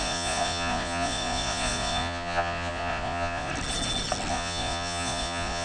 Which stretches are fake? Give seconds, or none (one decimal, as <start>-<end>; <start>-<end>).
0.0-3.5; 4.3-5.6